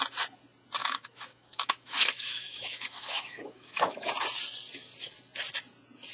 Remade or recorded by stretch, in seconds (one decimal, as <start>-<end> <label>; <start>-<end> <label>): 0.0-0.8 recorded; 0.8-4.1 remade; 4.1-6.1 recorded